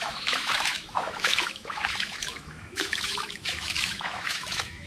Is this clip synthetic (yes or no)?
yes